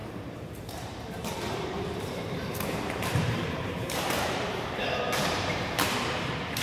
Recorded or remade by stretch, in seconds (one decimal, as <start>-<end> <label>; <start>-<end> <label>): 0.0-6.6 remade